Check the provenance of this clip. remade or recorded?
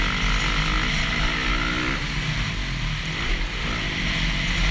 recorded